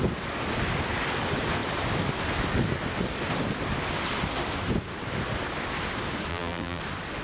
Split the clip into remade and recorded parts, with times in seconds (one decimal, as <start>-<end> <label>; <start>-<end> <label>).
0.0-6.3 recorded; 6.3-6.8 remade; 6.8-7.2 recorded